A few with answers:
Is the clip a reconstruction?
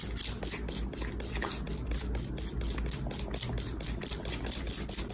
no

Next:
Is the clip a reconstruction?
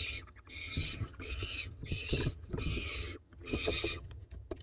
yes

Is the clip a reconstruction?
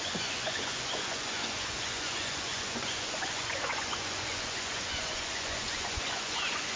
yes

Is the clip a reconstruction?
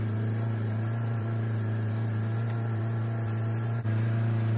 yes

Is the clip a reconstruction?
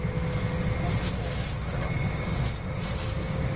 no